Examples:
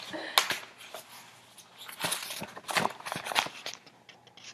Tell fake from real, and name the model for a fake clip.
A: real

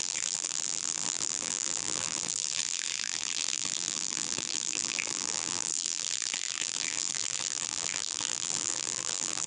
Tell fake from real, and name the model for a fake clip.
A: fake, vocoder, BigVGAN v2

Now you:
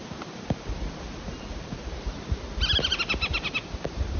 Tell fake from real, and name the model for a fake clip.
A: real